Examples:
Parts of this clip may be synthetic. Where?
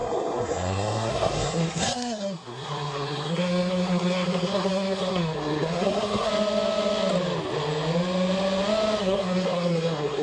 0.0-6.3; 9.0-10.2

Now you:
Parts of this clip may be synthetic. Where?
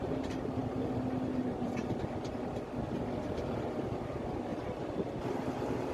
none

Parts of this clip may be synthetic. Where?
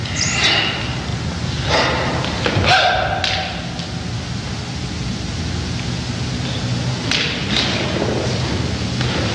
none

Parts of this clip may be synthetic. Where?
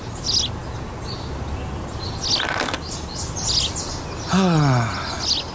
none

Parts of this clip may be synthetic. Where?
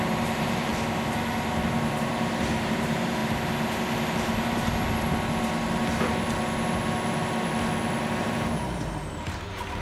0.0-0.7; 1.8-3.2; 8.2-9.8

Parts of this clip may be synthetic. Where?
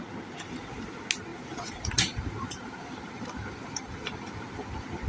1.3-4.4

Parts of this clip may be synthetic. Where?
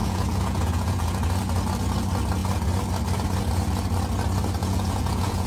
0.0-1.2; 4.6-5.5